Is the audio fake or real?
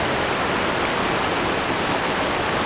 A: real